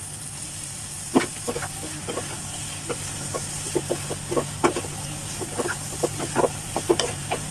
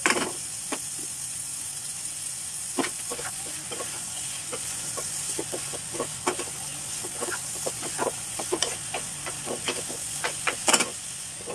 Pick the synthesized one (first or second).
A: second